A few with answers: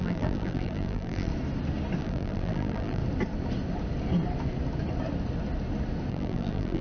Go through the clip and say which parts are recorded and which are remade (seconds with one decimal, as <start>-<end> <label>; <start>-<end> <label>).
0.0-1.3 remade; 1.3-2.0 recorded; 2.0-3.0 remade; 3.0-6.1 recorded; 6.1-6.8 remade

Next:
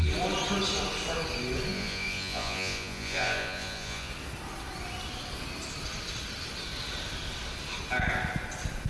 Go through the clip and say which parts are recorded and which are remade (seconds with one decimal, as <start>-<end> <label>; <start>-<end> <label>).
0.0-1.7 recorded; 1.7-4.1 remade; 4.1-8.9 recorded

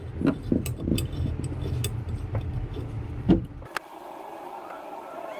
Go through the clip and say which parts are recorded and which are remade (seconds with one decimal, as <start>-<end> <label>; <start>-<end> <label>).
0.0-5.4 recorded

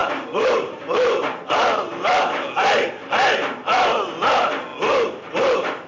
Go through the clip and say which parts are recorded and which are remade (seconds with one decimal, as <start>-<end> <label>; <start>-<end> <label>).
0.0-5.9 recorded

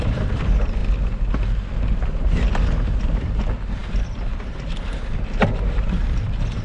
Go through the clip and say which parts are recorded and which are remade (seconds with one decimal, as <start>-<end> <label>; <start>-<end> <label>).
0.0-0.8 remade; 0.8-3.2 recorded; 3.2-6.6 remade

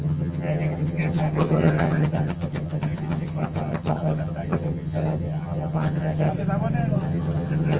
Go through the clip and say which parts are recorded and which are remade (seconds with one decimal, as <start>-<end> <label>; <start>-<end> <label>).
0.0-6.3 remade; 6.3-7.0 recorded; 7.0-7.8 remade

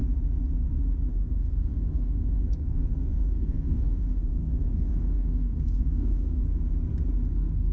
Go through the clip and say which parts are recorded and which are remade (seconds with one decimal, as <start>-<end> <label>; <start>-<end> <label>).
0.0-1.1 recorded; 1.1-6.4 remade; 6.4-7.3 recorded; 7.3-7.7 remade

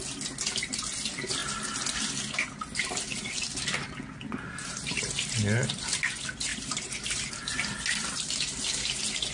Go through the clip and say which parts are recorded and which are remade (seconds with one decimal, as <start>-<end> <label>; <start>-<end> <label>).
0.0-4.6 recorded; 4.6-6.0 remade; 6.0-6.5 recorded; 6.5-7.3 remade; 7.3-9.3 recorded